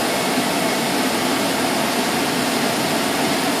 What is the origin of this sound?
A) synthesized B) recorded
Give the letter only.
B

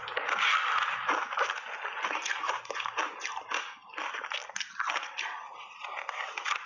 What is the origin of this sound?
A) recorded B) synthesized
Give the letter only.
A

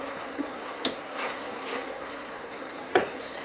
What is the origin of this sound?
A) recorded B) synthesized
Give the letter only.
B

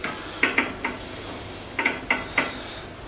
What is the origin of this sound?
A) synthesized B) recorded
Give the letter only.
B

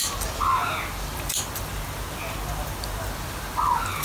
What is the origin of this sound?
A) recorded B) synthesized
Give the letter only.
A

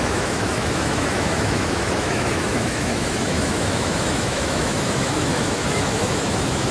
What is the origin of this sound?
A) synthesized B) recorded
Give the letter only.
A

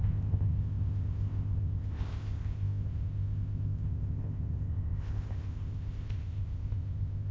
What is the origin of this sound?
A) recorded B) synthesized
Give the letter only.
B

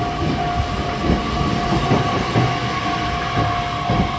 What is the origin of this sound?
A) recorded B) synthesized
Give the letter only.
A